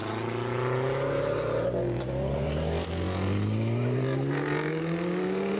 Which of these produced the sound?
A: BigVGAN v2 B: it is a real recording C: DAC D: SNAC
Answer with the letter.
B